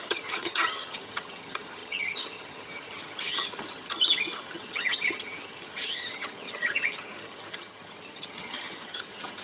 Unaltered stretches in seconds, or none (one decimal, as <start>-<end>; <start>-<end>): none